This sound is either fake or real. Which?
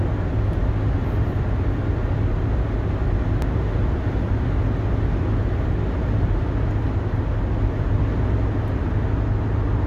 real